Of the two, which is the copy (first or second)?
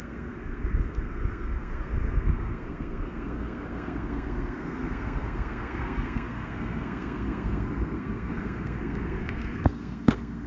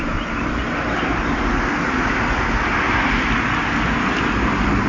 first